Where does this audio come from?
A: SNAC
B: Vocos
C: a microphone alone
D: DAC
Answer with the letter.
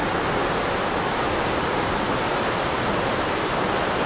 C